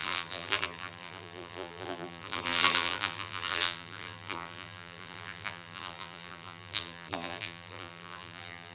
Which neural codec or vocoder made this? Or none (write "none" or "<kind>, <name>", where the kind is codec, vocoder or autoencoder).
vocoder, BigVGAN v2